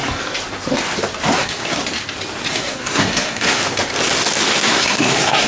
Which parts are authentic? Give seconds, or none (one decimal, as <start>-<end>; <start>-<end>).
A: 0.0-1.4; 1.8-2.5; 3.6-4.6